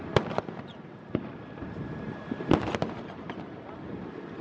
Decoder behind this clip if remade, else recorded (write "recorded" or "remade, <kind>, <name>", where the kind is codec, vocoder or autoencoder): recorded